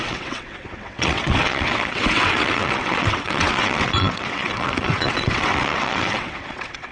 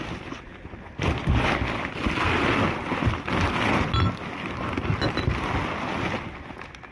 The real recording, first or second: second